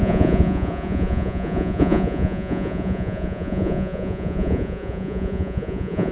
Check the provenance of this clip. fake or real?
fake